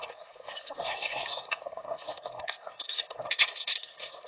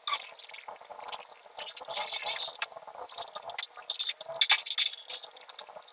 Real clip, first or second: second